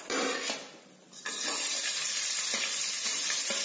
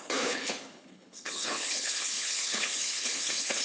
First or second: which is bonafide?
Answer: first